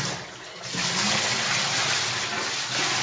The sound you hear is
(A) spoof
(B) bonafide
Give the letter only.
B